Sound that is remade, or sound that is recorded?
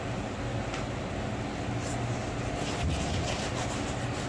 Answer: recorded